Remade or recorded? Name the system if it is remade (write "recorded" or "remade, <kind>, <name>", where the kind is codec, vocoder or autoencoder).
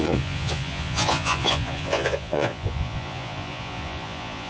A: remade, vocoder, Vocos